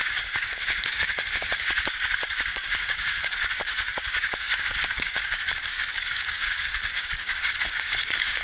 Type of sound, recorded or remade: remade